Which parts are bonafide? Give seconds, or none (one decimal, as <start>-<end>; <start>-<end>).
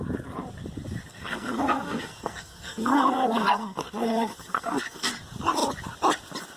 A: 0.0-1.1; 5.1-6.6